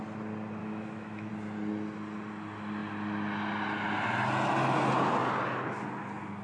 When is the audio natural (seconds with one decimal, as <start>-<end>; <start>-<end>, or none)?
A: 0.0-0.6; 1.3-6.4